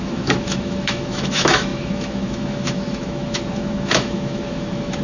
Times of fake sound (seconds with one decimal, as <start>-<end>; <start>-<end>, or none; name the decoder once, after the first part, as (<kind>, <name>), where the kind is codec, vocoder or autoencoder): 0.0-5.0 (autoencoder, DAC-VAE)